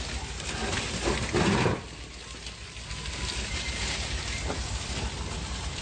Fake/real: real